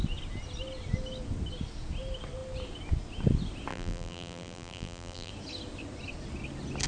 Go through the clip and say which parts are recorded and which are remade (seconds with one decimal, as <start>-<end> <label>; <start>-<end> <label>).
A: 0.0-3.7 recorded; 3.7-5.3 remade; 5.3-6.9 recorded